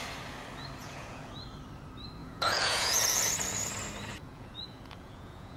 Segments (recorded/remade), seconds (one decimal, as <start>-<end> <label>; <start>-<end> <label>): 0.0-0.8 recorded; 0.8-1.3 remade; 1.3-2.2 recorded; 2.2-3.2 remade; 3.2-4.1 recorded; 4.1-5.6 remade